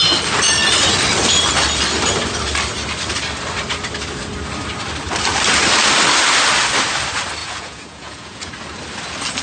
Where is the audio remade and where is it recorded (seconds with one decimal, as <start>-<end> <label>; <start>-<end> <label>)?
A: 0.0-7.4 recorded; 7.4-8.5 remade; 8.5-9.4 recorded